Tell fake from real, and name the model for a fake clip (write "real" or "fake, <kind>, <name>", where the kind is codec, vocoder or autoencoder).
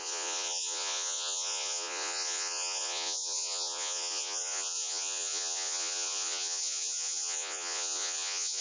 fake, vocoder, Vocos